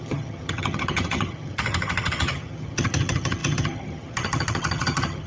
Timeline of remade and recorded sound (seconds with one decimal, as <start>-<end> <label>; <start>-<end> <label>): 0.0-5.3 remade